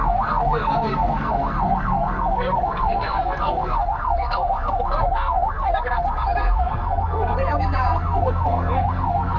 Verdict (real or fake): fake